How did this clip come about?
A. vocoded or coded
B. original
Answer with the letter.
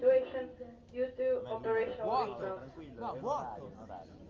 B